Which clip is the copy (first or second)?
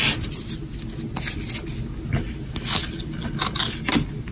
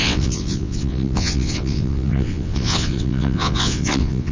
second